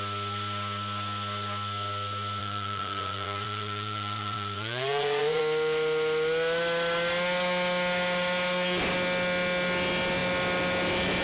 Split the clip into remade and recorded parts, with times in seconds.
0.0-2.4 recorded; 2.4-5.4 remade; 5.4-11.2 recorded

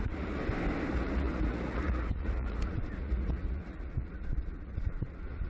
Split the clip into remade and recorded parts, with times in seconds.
0.0-0.4 remade; 0.4-0.9 recorded; 0.9-5.5 remade

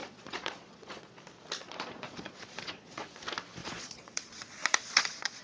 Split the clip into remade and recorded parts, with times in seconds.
0.0-1.2 remade; 1.2-1.6 recorded; 1.6-3.2 remade; 3.2-3.6 recorded; 3.6-5.4 remade

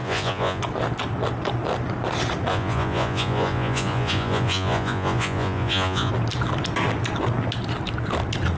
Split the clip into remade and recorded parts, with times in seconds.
0.0-0.6 remade; 0.6-2.5 recorded; 2.5-6.1 remade; 6.1-8.6 recorded

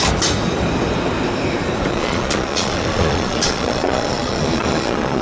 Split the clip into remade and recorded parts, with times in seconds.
0.0-1.9 recorded; 1.9-5.2 remade

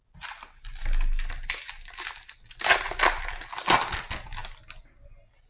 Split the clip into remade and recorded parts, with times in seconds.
0.0-5.5 recorded

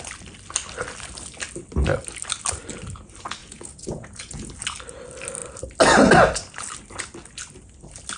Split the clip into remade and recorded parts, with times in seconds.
0.0-3.4 recorded; 3.4-4.5 remade; 4.5-8.2 recorded

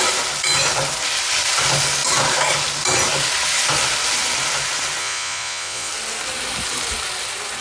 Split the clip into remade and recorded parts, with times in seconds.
0.0-5.0 recorded; 5.0-5.9 remade; 5.9-7.6 recorded